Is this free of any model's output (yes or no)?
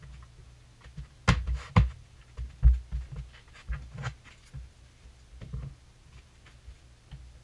yes